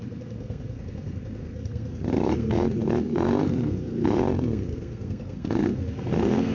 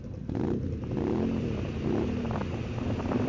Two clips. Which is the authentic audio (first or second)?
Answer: second